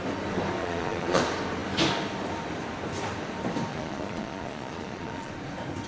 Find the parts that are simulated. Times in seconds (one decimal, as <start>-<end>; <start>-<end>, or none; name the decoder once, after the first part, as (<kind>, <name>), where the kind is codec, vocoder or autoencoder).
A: 0.6-1.2 (vocoder, Vocos); 3.7-5.3